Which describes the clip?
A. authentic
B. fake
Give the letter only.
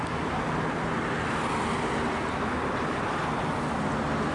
A